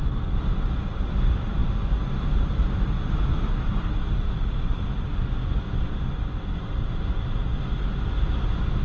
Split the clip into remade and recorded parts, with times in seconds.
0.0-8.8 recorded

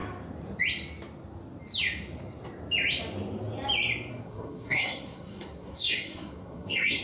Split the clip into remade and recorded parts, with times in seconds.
0.0-4.1 recorded; 4.1-7.0 remade

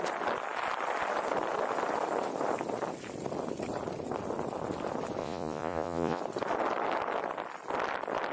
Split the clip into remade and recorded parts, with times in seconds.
0.0-5.2 recorded; 5.2-6.2 remade; 6.2-8.3 recorded

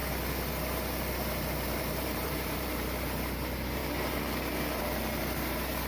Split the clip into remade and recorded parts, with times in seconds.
0.0-1.4 recorded; 1.4-3.8 remade; 3.8-4.8 recorded; 4.8-5.9 remade

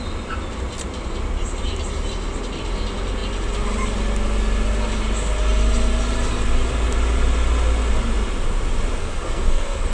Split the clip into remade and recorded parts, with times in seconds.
0.0-9.0 recorded; 9.0-9.9 remade

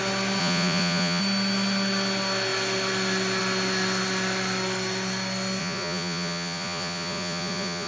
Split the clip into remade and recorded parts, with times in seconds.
0.0-0.4 recorded; 0.4-1.2 remade; 1.2-5.6 recorded; 5.6-7.9 remade